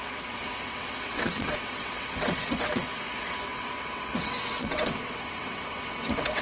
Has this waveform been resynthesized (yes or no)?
yes